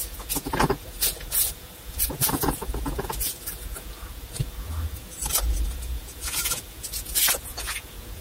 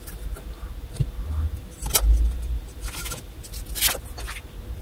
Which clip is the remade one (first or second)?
first